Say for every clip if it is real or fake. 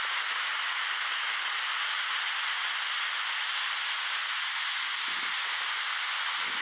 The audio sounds real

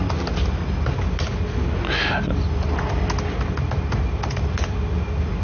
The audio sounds real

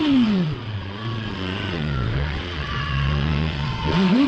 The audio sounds fake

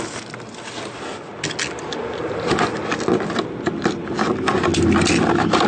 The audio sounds real